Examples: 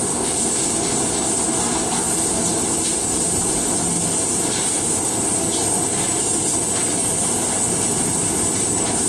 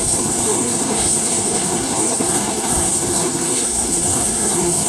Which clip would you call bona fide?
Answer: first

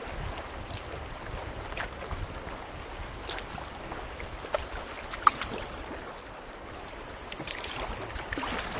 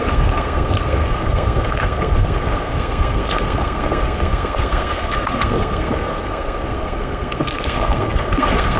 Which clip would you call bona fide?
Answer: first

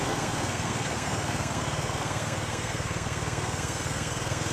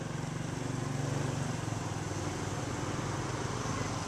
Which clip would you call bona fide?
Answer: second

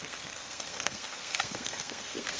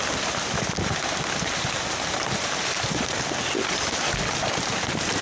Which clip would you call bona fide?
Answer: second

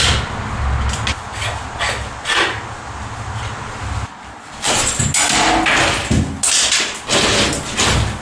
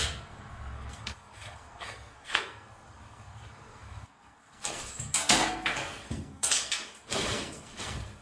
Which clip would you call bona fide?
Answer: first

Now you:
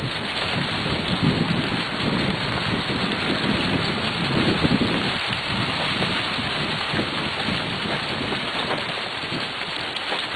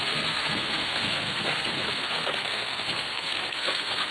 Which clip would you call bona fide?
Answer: first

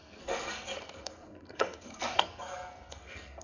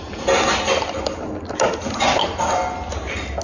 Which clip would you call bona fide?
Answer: second